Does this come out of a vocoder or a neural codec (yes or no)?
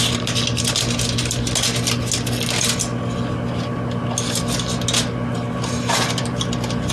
no